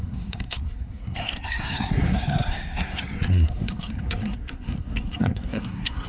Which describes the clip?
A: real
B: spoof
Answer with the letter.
B